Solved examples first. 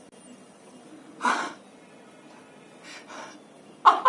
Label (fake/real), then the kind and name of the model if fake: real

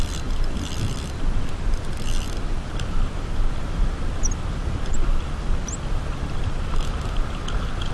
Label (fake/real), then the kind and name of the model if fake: real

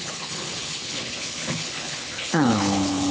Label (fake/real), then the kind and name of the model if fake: fake, codec, HILCodec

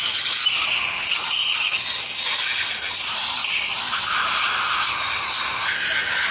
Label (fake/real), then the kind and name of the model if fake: real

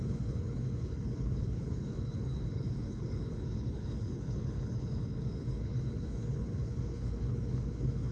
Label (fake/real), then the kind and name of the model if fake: fake, codec, HILCodec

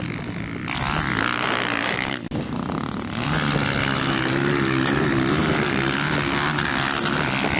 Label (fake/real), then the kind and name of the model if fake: real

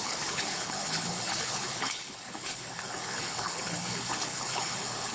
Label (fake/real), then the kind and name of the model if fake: fake, codec, HILCodec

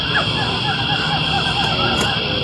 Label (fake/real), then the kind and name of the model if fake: real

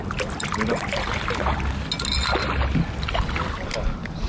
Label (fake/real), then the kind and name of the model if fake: real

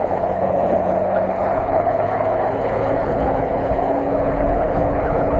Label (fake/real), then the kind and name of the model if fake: fake, codec, HILCodec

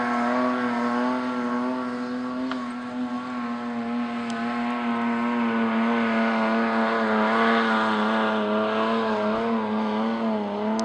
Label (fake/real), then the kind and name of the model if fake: real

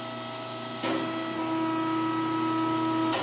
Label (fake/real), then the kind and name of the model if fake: real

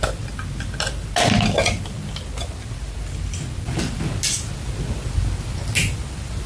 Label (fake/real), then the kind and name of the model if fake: real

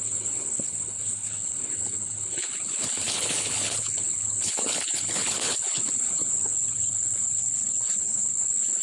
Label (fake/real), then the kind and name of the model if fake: fake, codec, HILCodec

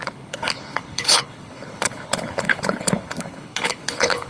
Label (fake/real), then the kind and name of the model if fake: fake, codec, HILCodec